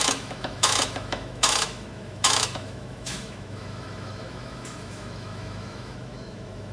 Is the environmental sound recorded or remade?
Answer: remade